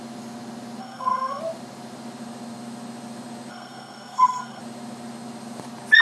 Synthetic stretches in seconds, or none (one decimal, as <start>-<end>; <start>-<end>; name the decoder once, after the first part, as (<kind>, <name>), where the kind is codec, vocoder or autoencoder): 0.8-1.4 (codec, SNAC); 3.5-4.6